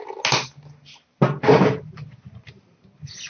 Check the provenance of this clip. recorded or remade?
recorded